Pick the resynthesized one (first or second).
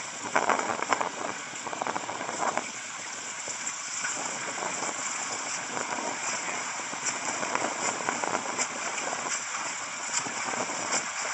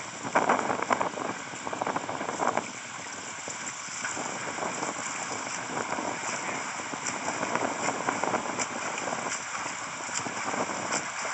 first